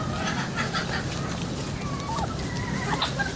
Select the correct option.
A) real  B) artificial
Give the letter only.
A